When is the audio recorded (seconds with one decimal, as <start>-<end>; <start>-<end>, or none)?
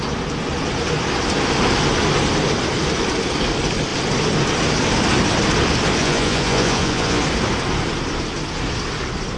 0.0-6.0; 7.2-9.4